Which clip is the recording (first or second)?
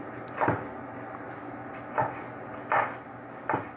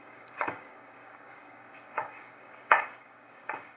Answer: first